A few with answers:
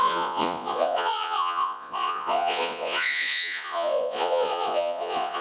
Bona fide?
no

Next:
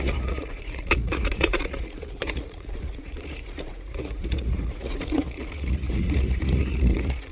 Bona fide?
no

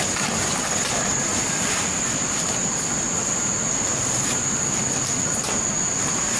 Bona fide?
yes